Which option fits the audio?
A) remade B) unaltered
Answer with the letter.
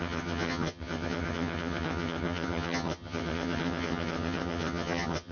A